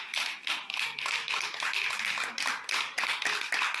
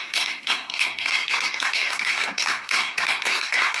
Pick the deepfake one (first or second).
second